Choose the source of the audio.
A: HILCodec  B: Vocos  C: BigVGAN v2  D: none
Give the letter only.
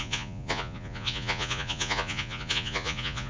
B